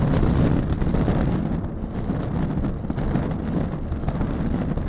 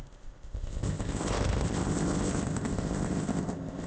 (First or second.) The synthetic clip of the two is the second